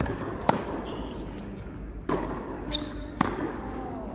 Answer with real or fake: fake